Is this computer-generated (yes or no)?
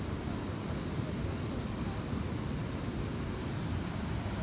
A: no